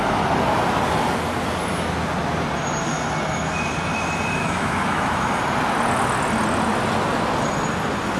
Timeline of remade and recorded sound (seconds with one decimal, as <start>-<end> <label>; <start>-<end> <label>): 0.0-4.4 recorded; 4.4-5.4 remade; 5.4-8.2 recorded